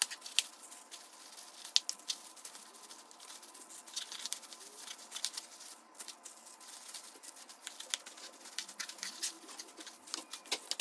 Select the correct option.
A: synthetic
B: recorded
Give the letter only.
B